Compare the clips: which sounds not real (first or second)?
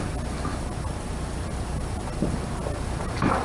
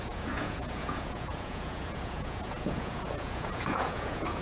second